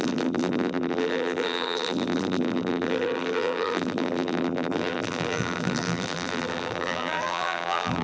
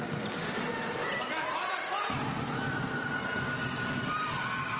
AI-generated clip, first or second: first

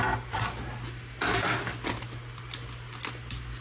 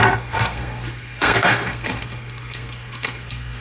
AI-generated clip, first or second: second